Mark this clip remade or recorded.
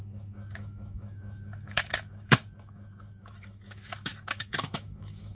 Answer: remade